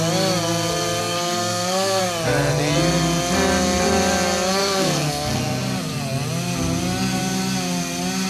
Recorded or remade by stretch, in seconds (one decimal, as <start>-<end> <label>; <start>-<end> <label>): 0.0-1.0 recorded; 1.0-2.0 remade; 2.0-4.6 recorded; 4.6-5.4 remade; 5.4-8.3 recorded